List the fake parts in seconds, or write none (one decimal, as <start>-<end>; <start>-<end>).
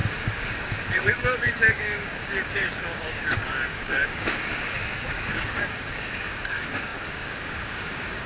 0.0-8.3